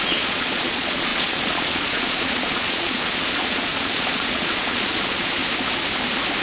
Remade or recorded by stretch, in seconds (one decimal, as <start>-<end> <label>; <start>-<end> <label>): 0.0-5.4 remade; 5.4-6.4 recorded